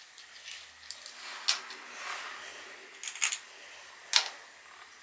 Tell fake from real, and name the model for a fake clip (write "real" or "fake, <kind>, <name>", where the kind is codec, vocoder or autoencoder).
real